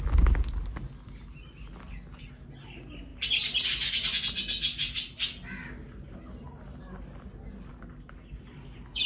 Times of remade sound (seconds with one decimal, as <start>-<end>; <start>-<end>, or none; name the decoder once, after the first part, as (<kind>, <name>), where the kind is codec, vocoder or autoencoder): none